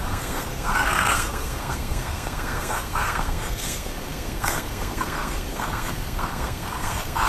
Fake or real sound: fake